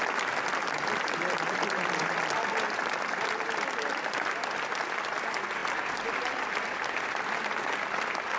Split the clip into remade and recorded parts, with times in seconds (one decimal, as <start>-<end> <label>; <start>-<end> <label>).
0.0-8.4 recorded